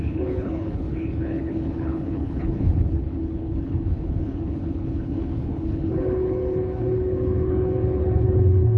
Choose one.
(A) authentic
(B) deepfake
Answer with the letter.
B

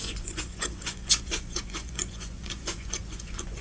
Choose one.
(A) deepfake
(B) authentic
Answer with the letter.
A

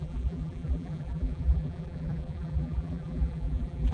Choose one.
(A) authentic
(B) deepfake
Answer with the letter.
B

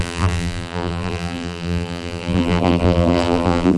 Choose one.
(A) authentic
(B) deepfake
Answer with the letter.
B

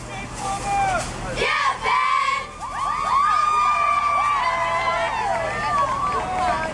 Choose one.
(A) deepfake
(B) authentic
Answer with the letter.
B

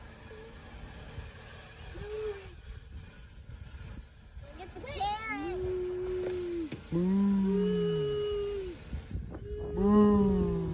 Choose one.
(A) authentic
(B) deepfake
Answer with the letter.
A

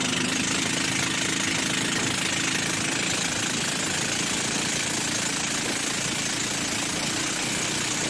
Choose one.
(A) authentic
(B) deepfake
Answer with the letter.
A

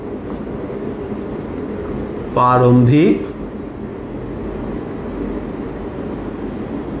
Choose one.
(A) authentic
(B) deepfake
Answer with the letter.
A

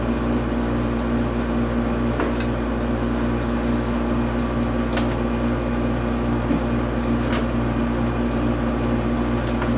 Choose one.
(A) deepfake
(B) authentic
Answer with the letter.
B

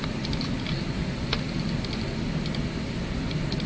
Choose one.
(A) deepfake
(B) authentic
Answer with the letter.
B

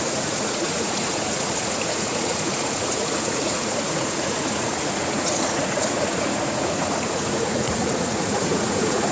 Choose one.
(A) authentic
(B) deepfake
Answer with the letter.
B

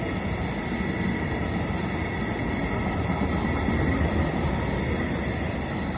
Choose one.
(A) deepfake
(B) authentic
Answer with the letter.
B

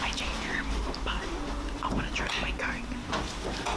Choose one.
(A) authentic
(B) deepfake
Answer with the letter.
A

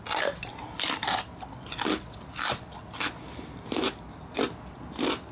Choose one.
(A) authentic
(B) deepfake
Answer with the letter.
A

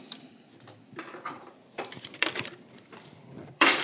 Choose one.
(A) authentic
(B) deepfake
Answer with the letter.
B